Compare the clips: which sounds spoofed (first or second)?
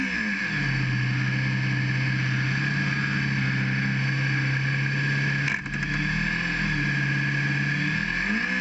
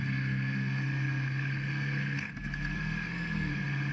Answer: second